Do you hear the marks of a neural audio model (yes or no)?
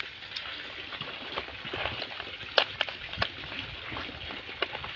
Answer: no